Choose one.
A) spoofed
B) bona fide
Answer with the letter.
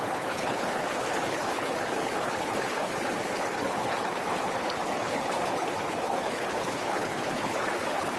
A